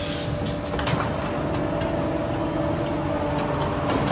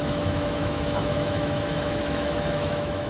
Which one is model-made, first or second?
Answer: second